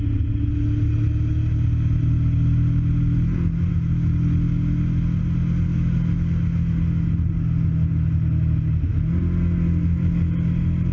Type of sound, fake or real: real